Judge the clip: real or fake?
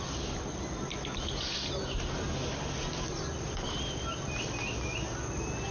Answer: real